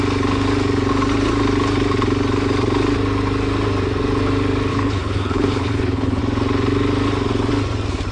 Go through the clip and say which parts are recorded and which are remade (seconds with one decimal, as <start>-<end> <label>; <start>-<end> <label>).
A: 0.0-4.7 recorded; 4.7-6.2 remade; 6.2-8.1 recorded